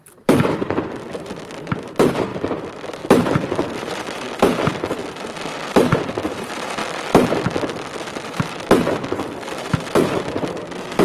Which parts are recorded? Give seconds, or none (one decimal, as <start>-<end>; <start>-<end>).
2.3-3.8; 5.0-5.7; 6.8-9.7

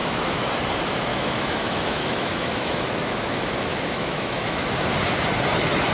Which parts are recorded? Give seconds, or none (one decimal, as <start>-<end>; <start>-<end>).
0.5-1.1; 4.6-5.9